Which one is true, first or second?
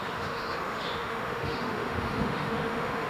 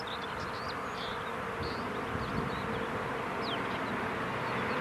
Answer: second